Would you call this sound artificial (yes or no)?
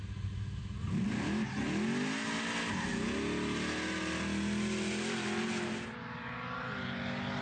no